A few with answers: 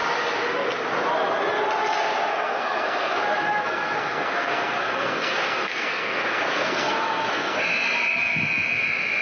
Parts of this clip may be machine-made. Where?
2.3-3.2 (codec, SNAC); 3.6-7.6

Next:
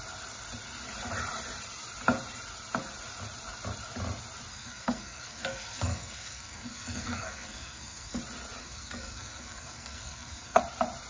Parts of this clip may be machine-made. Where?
4.5-8.2 (codec, SNAC); 8.6-10.6